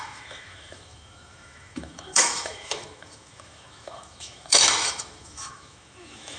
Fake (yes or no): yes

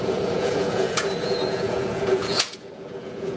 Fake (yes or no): yes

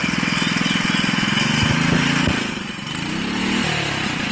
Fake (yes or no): no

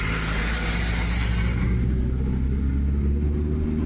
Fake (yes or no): no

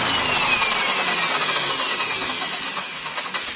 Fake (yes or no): no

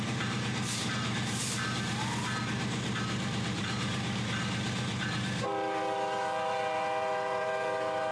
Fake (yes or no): yes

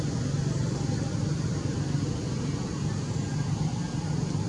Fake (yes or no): no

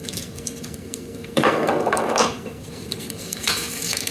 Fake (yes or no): yes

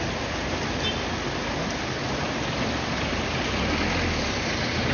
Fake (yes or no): no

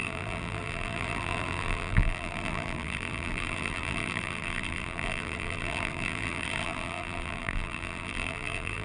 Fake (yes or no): yes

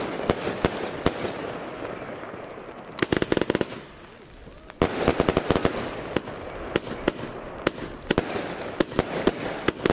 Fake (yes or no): no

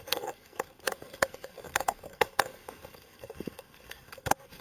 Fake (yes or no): yes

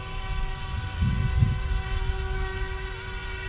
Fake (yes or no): no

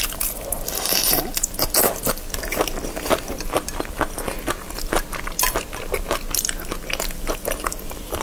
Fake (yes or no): no